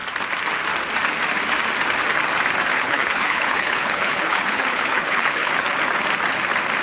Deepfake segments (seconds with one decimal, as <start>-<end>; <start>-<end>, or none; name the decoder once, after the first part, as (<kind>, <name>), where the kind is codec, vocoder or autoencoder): 2.7-5.6 (codec, HILCodec)